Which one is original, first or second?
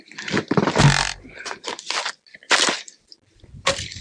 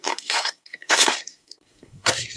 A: first